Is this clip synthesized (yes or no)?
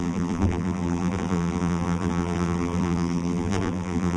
yes